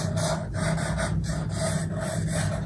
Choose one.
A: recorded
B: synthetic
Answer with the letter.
A